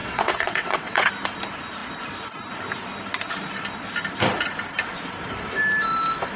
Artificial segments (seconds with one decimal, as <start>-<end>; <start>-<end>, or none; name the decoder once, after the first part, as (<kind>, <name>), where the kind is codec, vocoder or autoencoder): 0.0-1.1 (vocoder, WaveNeXt)